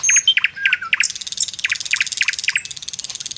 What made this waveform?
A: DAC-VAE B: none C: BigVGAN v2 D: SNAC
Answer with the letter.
B